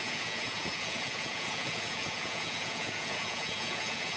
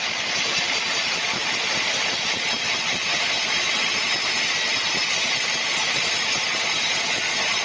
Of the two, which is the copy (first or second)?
first